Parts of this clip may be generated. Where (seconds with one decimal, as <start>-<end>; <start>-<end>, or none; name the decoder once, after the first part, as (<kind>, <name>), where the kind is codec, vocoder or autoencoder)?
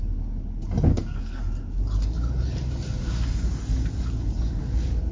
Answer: 0.9-1.4 (codec, SNAC)